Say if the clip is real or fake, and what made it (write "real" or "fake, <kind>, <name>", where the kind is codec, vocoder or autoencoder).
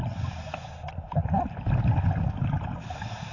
real